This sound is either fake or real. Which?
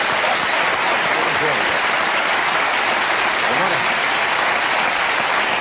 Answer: real